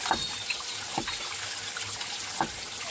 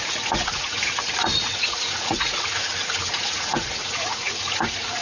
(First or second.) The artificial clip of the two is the second